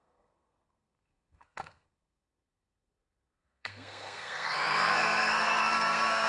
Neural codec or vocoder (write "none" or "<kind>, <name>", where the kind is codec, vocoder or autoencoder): codec, SNAC